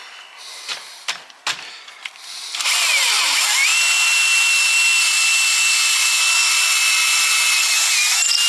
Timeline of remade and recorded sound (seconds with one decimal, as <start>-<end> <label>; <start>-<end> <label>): 0.0-8.5 recorded